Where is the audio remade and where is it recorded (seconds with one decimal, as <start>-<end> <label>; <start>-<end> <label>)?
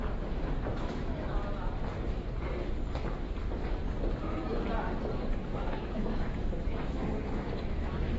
0.0-0.7 recorded; 0.7-1.3 remade; 1.3-5.4 recorded; 5.4-8.2 remade